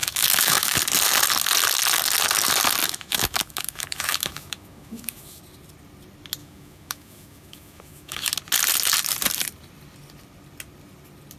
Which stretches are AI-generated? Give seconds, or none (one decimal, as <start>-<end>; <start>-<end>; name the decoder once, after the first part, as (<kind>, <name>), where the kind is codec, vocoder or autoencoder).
0.0-0.8 (autoencoder, DAC-VAE); 2.8-5.4; 6.4-8.3